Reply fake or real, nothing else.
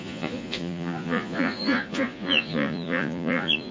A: fake